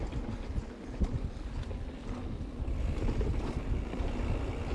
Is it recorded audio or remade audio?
recorded